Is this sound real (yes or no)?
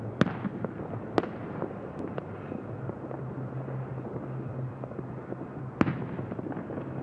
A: yes